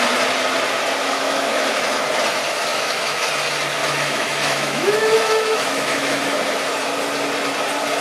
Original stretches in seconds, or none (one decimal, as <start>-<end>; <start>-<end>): 0.0-1.0; 1.8-2.7; 3.3-3.8; 6.2-8.0